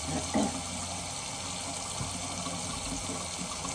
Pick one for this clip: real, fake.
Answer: real